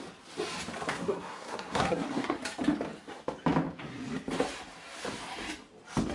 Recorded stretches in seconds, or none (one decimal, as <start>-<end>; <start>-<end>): 0.0-0.9; 2.4-6.1